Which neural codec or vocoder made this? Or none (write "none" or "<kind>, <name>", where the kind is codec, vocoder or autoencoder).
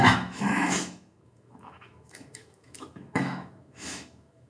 autoencoder, DAC-VAE